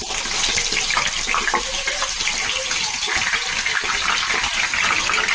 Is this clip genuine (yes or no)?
yes